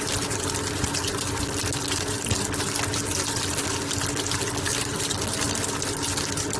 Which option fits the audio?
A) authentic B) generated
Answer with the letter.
A